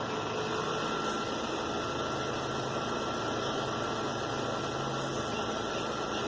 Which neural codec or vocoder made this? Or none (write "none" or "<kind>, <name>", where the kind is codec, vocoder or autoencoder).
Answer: none